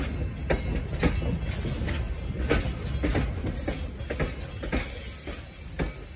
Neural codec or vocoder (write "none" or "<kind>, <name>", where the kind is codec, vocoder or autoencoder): none